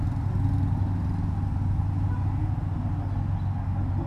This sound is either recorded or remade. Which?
recorded